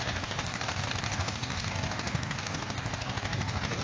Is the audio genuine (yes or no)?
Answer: no